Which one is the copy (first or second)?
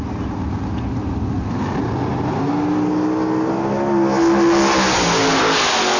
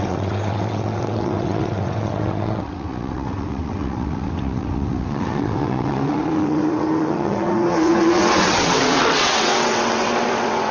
second